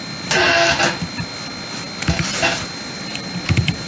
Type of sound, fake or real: real